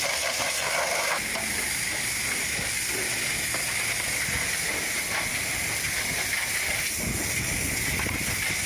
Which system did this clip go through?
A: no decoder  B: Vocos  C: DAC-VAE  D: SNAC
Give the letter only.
A